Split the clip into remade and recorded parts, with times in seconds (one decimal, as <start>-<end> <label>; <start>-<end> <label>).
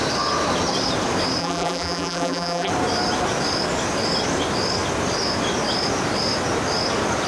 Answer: 0.0-1.4 recorded; 1.4-2.7 remade; 2.7-7.3 recorded